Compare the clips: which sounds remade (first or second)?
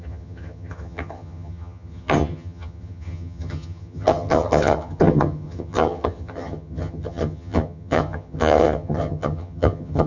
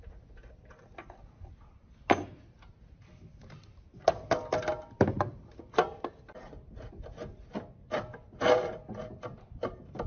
first